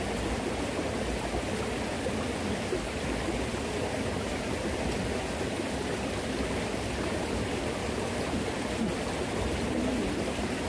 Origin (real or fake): real